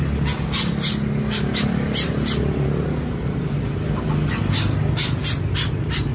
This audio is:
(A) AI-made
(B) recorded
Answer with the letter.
B